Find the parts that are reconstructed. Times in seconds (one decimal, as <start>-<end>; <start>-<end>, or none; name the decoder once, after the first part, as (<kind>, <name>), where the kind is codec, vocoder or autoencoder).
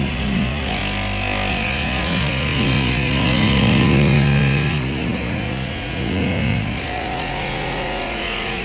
0.0-0.8 (vocoder, Vocos); 1.5-8.6